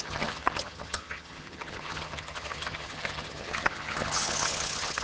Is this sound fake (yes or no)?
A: yes